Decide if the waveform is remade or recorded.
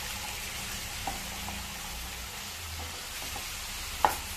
recorded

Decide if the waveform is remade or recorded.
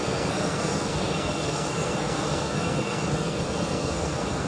remade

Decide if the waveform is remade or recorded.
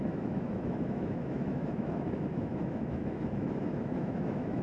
remade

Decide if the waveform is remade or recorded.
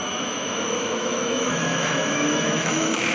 remade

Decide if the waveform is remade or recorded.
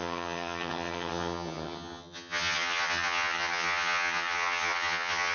remade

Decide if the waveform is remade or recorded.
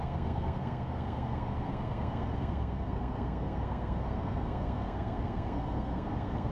remade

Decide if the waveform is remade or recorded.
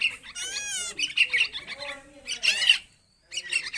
recorded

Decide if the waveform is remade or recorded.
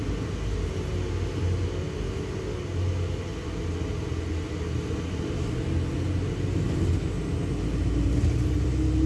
recorded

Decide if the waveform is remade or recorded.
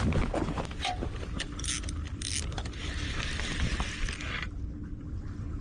recorded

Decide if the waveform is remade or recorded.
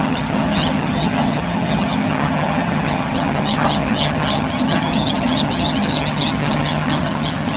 remade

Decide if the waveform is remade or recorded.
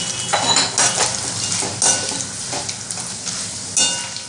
recorded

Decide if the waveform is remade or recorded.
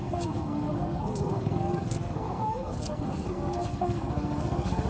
remade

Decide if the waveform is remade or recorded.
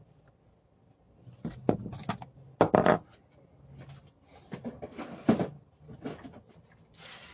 recorded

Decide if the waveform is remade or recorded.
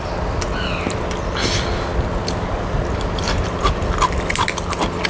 recorded